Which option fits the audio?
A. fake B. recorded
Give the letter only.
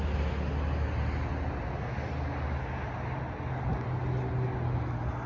B